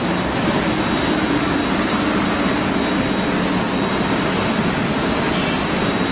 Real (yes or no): yes